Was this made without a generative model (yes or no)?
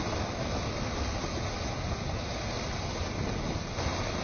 yes